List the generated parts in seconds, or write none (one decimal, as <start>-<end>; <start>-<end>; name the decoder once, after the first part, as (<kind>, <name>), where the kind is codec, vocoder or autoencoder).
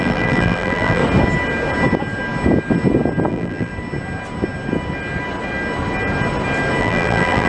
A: 0.0-1.0 (vocoder, BigVGAN v2); 3.3-3.7; 6.8-7.5